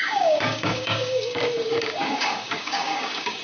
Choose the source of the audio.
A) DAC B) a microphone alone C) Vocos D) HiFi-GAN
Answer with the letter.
A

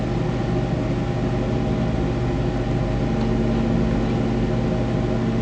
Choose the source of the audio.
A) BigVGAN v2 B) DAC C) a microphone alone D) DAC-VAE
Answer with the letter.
C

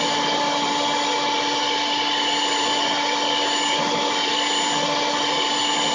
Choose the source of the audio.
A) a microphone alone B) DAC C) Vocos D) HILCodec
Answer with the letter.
A